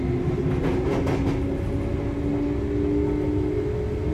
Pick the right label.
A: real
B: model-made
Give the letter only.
A